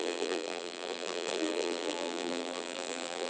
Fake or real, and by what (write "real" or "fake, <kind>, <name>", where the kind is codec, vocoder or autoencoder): fake, vocoder, BigVGAN v2